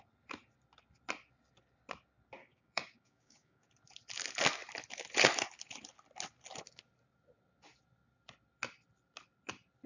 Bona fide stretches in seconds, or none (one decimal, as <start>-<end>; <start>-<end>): 0.0-2.4; 3.7-9.9